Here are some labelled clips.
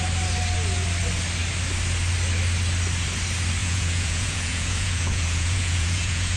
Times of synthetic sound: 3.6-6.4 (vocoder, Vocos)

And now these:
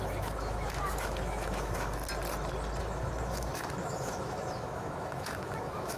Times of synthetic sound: 0.0-2.0 (autoencoder, DAC-VAE); 2.8-6.0

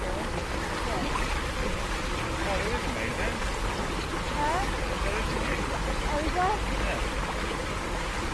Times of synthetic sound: none